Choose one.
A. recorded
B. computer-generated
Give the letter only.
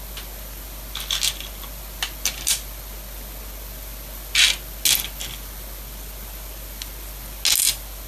A